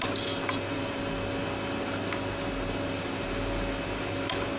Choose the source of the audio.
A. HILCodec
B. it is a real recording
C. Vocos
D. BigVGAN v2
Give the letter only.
B